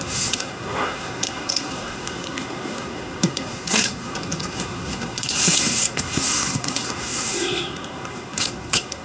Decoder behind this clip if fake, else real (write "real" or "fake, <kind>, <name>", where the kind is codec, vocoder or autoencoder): fake, codec, SNAC